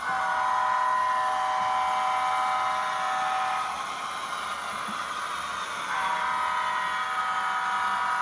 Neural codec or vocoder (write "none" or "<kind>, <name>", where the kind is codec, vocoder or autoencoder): none